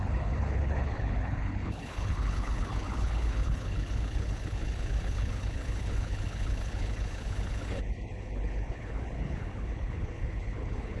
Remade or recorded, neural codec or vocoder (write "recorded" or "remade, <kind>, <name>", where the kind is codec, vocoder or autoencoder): remade, codec, HILCodec